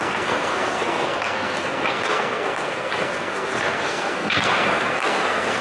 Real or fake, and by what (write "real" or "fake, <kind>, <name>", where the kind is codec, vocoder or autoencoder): fake, codec, SNAC